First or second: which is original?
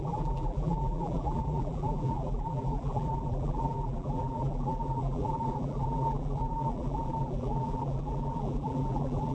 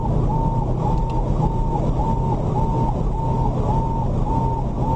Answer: second